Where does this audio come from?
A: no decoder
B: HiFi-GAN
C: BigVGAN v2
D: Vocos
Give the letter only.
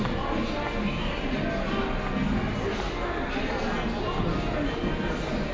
A